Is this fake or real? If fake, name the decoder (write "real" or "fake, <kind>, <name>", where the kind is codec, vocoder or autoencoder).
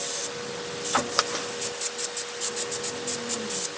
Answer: real